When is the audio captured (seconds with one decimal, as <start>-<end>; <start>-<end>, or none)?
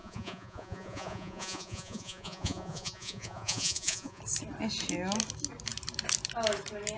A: 4.2-7.0